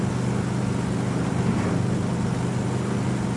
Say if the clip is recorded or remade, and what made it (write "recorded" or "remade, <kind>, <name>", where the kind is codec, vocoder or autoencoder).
recorded